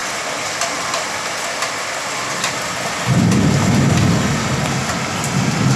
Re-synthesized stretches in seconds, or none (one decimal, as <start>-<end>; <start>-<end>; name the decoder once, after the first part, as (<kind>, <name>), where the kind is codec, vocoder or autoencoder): none